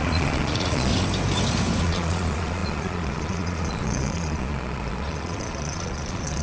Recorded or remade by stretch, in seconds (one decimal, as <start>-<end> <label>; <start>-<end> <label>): 0.0-0.9 remade; 0.9-1.8 recorded; 1.8-6.4 remade